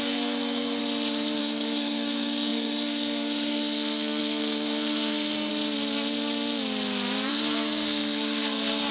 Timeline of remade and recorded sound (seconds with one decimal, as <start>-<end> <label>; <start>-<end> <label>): 0.0-0.8 remade; 0.8-1.4 recorded; 1.4-5.5 remade; 5.5-7.3 recorded; 7.3-8.9 remade